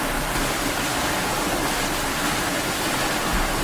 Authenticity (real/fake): real